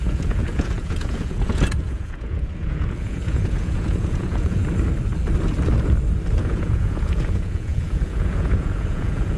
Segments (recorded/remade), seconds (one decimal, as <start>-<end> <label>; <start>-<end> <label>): 0.0-4.6 remade; 4.6-6.4 recorded; 6.4-9.4 remade